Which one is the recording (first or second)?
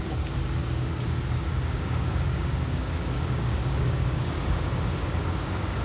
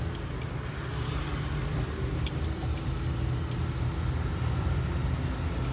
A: second